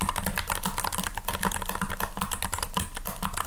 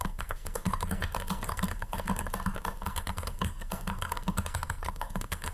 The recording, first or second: first